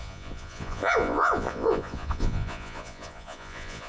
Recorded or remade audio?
remade